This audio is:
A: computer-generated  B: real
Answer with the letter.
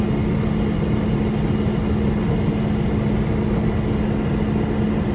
B